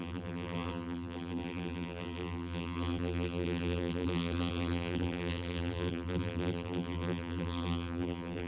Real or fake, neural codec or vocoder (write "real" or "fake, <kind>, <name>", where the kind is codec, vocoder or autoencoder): fake, vocoder, BigVGAN v2